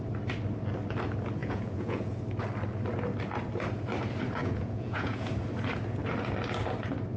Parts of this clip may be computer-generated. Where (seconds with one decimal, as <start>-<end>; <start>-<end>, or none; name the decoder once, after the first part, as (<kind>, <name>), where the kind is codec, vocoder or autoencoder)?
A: 1.4-2.2 (vocoder, Vocos); 4.4-5.3